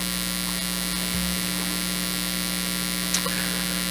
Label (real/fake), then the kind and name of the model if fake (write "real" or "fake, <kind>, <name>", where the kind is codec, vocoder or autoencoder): real